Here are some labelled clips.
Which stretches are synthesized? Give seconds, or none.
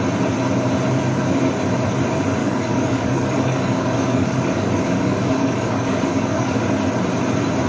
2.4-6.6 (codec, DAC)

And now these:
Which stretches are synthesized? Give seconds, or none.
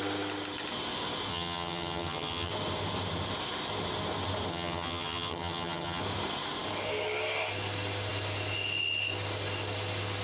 1.3-2.5 (vocoder, HiFi-GAN); 4.5-6.0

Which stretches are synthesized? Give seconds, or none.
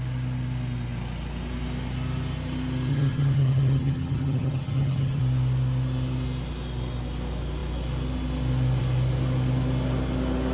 2.9-5.2 (vocoder, HiFi-GAN)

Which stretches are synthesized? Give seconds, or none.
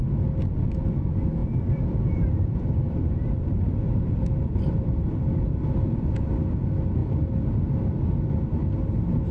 1.4-5.7 (vocoder, BigVGAN v2)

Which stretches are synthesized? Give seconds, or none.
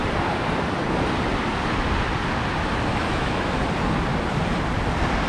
2.9-3.6 (autoencoder, DAC-VAE)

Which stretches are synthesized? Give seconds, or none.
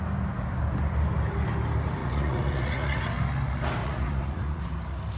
2.0-3.1 (vocoder, Vocos); 3.8-4.6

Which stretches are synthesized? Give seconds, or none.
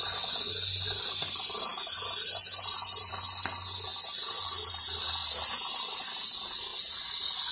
none